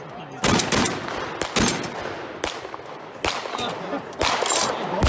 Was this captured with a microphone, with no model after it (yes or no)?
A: yes